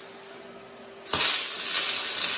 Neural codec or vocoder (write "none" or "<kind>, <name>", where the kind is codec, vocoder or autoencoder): none